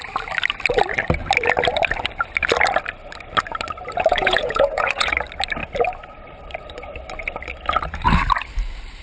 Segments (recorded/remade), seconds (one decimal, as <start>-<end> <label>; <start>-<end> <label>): 0.0-4.1 recorded; 4.1-5.1 remade; 5.1-9.0 recorded